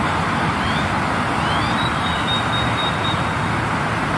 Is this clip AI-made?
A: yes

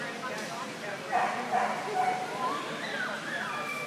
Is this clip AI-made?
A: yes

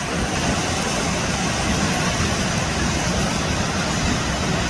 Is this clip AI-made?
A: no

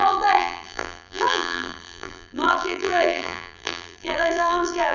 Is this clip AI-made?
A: yes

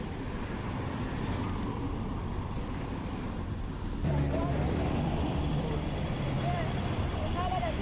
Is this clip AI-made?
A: yes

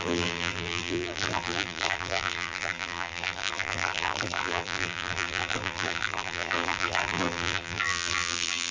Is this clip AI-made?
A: yes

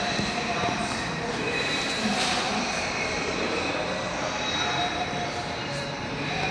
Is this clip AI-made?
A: yes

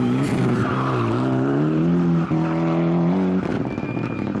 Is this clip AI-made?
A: no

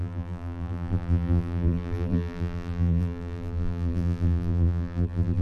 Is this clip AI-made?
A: yes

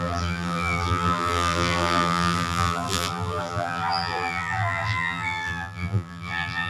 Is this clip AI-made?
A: yes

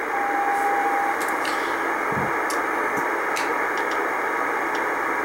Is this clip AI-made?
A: no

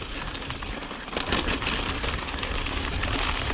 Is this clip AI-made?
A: no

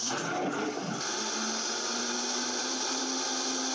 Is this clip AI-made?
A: no